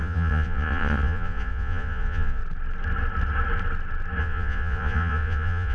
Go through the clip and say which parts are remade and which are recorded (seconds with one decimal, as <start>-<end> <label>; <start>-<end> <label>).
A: 0.0-2.4 remade; 2.4-4.2 recorded; 4.2-5.7 remade